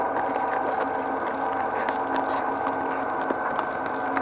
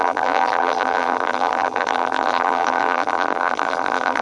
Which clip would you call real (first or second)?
first